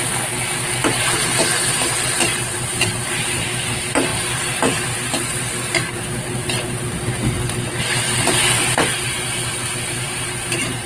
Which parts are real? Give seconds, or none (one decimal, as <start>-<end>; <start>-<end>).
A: 0.0-10.9